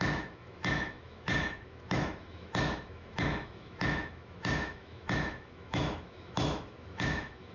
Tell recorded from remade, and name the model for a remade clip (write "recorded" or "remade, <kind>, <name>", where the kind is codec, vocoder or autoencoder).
remade, autoencoder, DAC-VAE